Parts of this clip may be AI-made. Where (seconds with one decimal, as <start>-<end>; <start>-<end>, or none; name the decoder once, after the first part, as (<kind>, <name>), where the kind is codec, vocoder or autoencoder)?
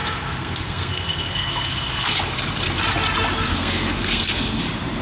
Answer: 0.0-2.2 (codec, SNAC); 3.5-4.6